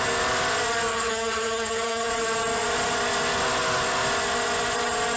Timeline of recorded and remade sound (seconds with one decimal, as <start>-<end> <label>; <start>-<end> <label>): 0.0-0.9 recorded; 0.9-2.1 remade; 2.1-5.2 recorded